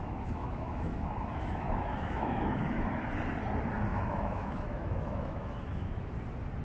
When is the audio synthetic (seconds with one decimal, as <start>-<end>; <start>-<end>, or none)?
0.0-3.0; 3.9-6.1

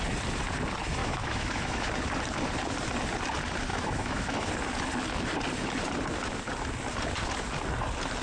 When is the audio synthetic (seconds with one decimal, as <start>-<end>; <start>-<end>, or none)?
1.0-1.9; 3.7-4.5

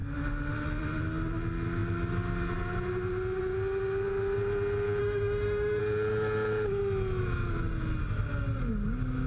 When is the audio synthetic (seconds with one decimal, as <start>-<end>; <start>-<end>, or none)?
5.0-5.8

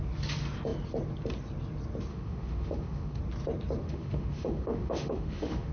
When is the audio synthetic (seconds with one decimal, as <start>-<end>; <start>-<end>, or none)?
2.1-3.2; 3.8-5.7

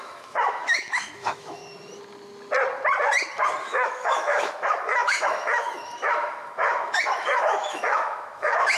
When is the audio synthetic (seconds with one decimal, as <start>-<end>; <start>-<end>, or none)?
0.0-1.6; 3.6-8.8

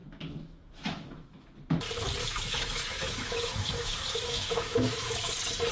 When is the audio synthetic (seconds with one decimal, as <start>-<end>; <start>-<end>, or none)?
0.0-1.5; 2.2-5.3

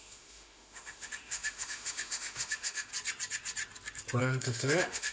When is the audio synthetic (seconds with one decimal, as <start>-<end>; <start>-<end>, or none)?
0.0-2.9; 4.2-5.1